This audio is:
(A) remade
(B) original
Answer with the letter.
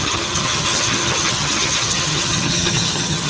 A